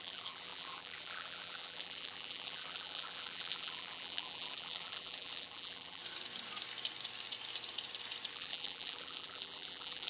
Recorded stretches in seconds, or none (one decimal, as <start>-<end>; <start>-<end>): 6.0-8.3